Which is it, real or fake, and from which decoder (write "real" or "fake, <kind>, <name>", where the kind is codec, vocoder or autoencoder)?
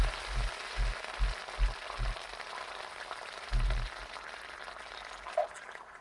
real